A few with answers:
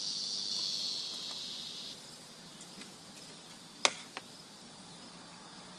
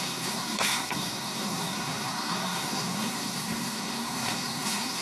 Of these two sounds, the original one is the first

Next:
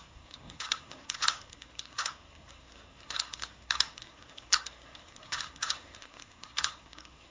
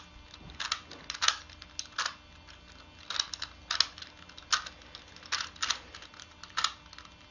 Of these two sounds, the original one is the second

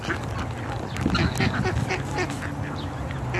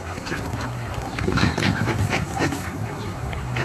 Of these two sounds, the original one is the first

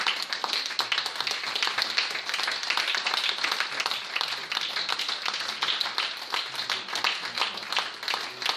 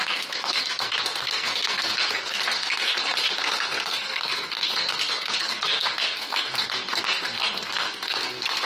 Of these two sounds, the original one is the first